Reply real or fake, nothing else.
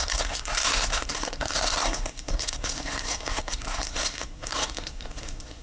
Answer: fake